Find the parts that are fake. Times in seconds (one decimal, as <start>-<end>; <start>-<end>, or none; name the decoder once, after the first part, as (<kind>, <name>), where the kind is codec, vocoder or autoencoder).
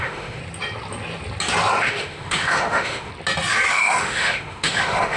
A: 0.0-0.4 (autoencoder, DAC-VAE); 1.8-3.1; 3.7-5.2